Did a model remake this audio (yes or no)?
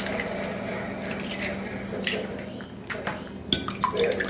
no